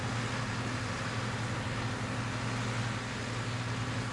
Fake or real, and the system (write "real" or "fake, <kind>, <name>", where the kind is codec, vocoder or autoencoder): real